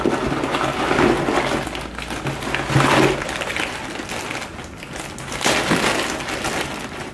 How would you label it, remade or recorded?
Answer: recorded